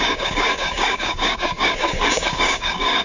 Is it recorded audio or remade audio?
remade